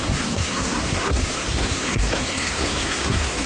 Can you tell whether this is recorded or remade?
remade